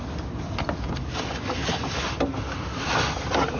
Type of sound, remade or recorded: recorded